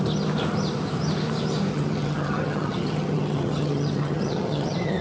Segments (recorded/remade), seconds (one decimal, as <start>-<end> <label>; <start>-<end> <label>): 0.0-1.7 recorded; 1.7-5.0 remade